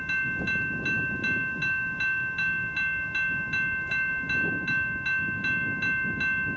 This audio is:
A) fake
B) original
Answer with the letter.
B